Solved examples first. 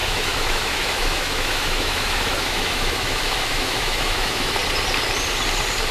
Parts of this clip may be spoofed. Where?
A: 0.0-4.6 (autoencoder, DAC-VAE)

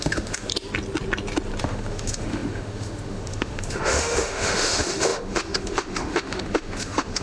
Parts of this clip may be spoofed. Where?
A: 0.0-0.5 (autoencoder, DAC-VAE); 1.6-7.2

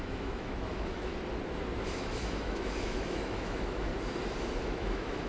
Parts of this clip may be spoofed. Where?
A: 0.0-1.1 (autoencoder, DAC-VAE); 1.9-3.9; 4.6-5.3

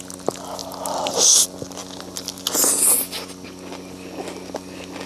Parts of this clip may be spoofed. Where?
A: none